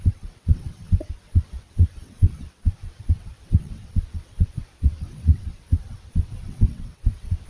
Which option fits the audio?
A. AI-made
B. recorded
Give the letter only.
A